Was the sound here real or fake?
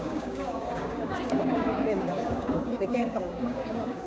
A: fake